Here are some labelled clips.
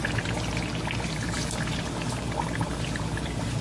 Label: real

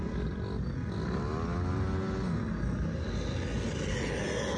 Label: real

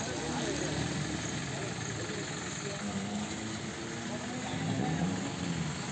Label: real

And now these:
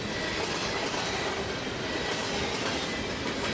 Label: real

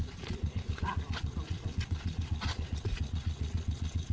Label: fake